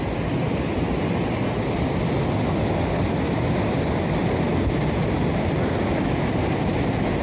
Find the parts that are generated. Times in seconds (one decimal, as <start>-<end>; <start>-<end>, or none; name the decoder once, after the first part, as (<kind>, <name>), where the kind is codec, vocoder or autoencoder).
none